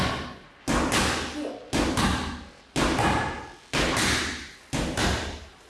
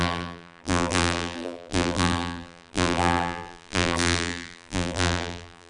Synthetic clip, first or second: second